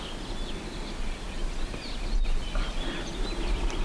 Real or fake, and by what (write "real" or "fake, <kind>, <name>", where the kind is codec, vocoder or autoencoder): real